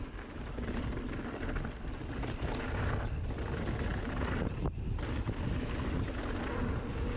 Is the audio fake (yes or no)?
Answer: no